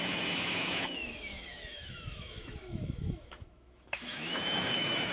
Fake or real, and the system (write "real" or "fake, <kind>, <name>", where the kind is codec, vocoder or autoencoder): fake, autoencoder, DAC-VAE